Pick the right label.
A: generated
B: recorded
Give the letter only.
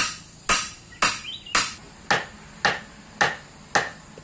B